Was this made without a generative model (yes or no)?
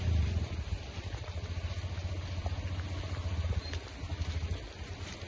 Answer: yes